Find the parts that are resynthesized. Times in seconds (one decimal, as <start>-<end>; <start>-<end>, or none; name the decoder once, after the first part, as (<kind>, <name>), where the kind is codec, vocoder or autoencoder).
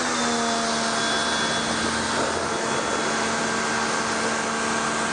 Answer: none